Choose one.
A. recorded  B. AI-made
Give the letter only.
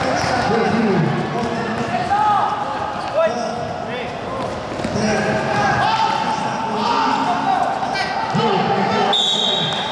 A